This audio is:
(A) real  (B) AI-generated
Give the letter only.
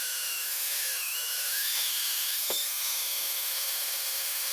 B